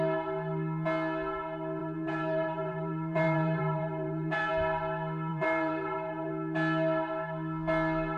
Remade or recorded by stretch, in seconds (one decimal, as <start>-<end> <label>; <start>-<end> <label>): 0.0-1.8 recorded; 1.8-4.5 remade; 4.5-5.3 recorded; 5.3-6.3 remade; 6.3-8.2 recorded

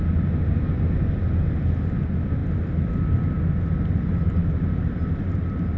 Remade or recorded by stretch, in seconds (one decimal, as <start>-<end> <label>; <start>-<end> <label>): 0.0-5.8 recorded

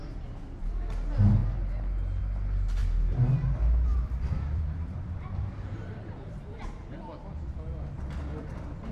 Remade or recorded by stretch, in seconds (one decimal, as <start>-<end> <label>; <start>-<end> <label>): 0.0-3.9 recorded; 3.9-6.9 remade; 6.9-8.9 recorded

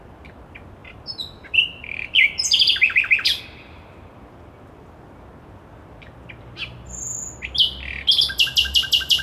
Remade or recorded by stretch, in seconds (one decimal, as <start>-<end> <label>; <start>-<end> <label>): 0.0-0.8 recorded; 0.8-3.4 remade; 3.4-9.2 recorded